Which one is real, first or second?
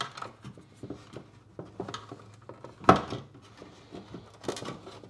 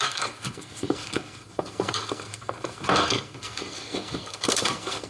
first